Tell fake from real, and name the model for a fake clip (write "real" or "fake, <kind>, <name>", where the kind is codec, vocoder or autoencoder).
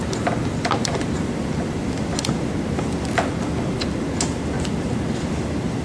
real